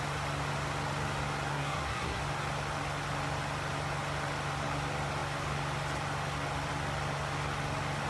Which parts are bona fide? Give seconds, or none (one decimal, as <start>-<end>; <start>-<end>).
0.0-1.5; 2.2-8.1